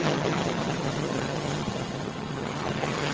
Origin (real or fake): fake